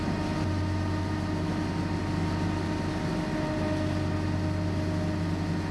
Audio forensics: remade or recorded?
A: recorded